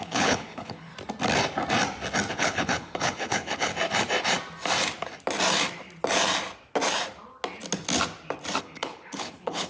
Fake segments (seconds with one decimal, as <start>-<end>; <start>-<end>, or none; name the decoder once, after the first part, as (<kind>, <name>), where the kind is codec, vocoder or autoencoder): 0.0-0.9 (codec, HILCodec); 2.3-3.7; 8.6-9.7